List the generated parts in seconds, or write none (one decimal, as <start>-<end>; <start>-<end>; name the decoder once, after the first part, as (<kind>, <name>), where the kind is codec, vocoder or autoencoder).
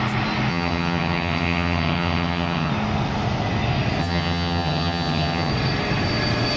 0.5-2.7 (vocoder, HiFi-GAN); 4.0-5.5